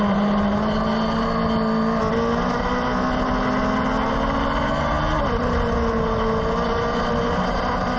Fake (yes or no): no